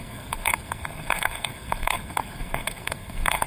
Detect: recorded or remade remade